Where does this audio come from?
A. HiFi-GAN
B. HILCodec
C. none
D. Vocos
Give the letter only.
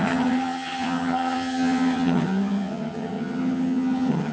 A